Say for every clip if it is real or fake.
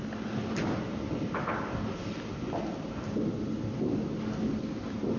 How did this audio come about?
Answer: real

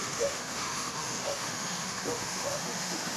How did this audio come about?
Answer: fake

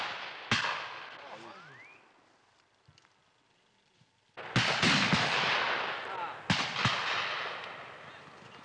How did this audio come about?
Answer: real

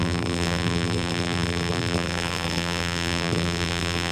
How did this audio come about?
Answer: fake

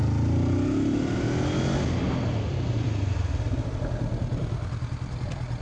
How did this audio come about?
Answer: real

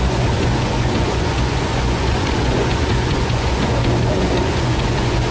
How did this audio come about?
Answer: fake